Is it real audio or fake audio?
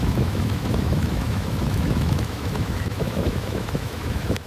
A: fake